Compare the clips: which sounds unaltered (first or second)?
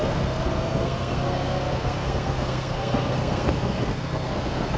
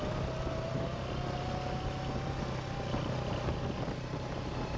second